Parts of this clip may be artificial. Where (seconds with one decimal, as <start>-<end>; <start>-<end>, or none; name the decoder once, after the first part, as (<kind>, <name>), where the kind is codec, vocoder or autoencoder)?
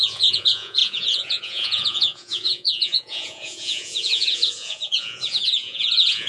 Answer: 0.0-6.3 (vocoder, Vocos)